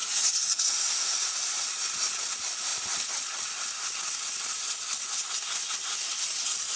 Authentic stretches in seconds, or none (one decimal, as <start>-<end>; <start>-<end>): 0.0-6.8